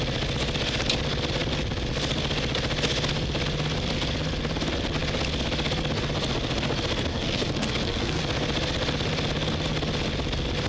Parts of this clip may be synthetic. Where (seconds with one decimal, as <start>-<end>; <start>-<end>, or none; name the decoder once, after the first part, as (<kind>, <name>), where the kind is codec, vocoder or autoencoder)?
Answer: 7.1-8.2 (codec, SNAC)